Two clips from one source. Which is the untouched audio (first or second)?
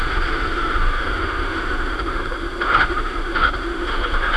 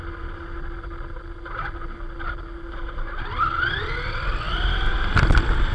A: second